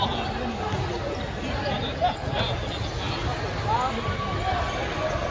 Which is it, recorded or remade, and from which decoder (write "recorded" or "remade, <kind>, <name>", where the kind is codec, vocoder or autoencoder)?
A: recorded